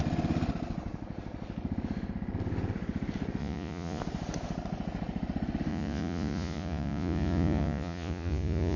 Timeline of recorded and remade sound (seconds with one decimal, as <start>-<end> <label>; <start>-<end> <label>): 0.0-3.4 recorded; 3.4-4.0 remade; 4.0-5.7 recorded; 5.7-8.8 remade